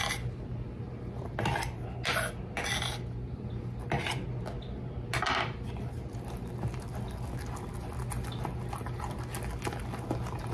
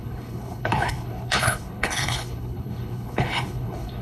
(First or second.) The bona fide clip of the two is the first